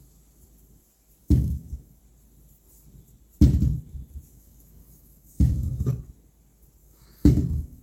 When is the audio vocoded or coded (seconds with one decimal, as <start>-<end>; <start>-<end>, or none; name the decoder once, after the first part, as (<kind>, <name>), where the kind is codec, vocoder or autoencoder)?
1.2-2.0 (codec, DAC); 4.3-6.0; 6.8-7.8